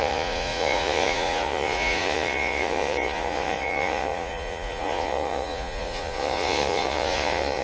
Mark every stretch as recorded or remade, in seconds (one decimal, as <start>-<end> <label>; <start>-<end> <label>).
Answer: 0.0-7.6 remade